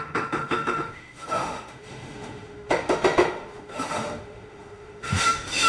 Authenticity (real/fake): fake